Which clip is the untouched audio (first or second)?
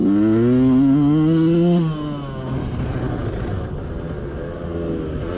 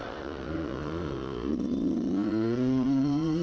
first